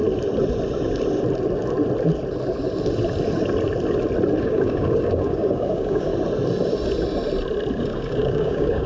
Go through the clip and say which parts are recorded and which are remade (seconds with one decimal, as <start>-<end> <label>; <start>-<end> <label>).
0.0-4.4 recorded; 4.4-6.1 remade; 6.1-7.7 recorded; 7.7-8.9 remade